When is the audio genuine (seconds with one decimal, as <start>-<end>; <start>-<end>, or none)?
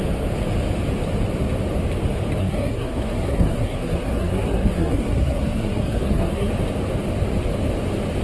0.0-2.4; 6.5-8.2